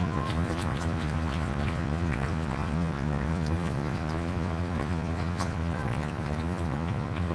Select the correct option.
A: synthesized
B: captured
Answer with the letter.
A